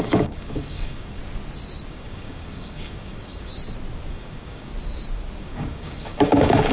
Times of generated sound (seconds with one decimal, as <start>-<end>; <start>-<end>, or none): 0.0-1.2; 1.9-3.5; 4.1-4.7; 5.4-6.7